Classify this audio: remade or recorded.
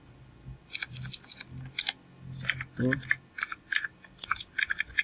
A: recorded